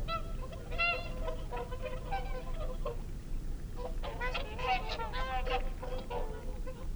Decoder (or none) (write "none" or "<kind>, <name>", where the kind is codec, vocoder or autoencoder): none